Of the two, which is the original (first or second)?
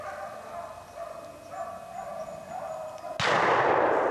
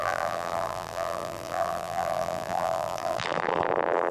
first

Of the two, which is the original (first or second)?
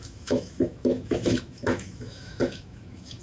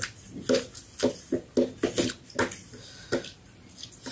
second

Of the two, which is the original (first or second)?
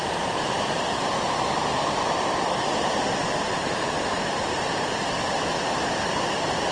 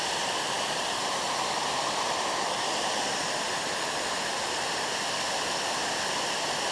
second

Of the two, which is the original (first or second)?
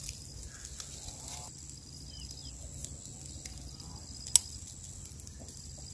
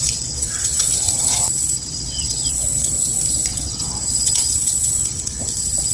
first